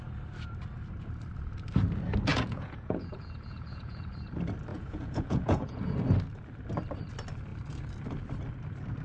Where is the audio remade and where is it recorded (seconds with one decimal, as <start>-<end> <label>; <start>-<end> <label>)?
0.0-2.3 recorded; 2.3-4.1 remade; 4.1-4.7 recorded; 4.7-5.8 remade; 5.8-9.0 recorded